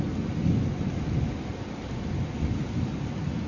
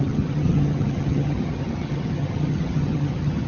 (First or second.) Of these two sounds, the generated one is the second